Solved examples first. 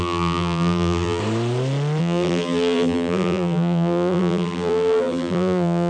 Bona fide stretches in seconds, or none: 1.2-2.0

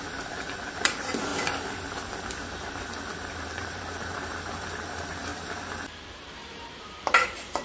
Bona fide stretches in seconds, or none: 1.3-3.3; 5.3-6.1

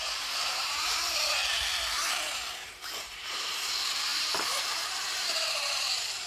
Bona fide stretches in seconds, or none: 1.4-2.2

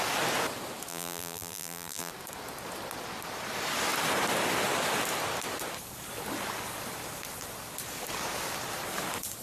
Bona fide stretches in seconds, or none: 0.0-0.9; 2.1-9.4